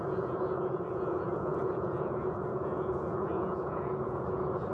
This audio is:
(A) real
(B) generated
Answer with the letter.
B